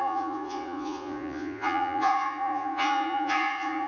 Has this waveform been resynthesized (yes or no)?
yes